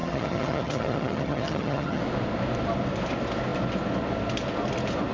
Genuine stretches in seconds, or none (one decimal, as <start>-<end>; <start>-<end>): 2.0-5.1